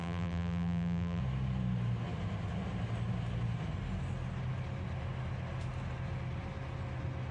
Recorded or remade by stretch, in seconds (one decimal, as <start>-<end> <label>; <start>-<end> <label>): 0.0-1.2 remade; 1.2-7.3 recorded

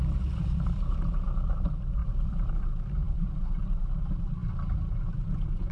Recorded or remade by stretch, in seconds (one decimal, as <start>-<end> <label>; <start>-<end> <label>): 0.0-2.0 recorded; 2.0-2.5 remade; 2.5-3.0 recorded; 3.0-3.8 remade; 3.8-5.7 recorded

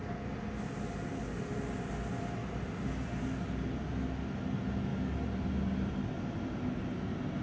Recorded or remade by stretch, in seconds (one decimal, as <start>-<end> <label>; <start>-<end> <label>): 0.0-2.4 recorded; 2.4-3.2 remade; 3.2-7.4 recorded

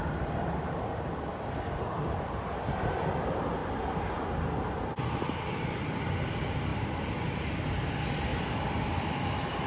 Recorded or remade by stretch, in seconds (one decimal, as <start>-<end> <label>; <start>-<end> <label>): 0.0-8.3 recorded; 8.3-9.0 remade; 9.0-9.7 recorded

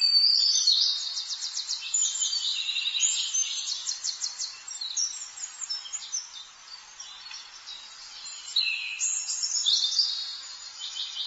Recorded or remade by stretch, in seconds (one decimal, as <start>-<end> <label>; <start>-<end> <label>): 0.0-3.8 remade; 3.8-4.7 recorded; 4.7-9.6 remade; 9.6-10.9 recorded; 10.9-11.3 remade

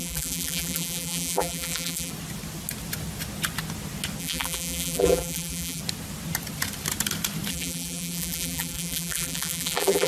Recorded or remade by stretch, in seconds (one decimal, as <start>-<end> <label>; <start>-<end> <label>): 0.0-2.1 remade; 2.1-4.2 recorded; 4.2-5.8 remade; 5.8-7.5 recorded; 7.5-10.1 remade

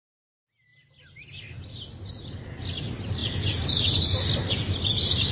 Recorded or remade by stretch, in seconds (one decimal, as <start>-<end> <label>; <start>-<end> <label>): 0.0-5.3 recorded

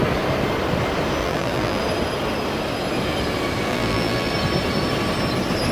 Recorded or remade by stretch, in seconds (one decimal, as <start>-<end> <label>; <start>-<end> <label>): 0.0-1.2 recorded; 1.2-1.8 remade; 1.8-3.7 recorded; 3.7-4.3 remade; 4.3-5.7 recorded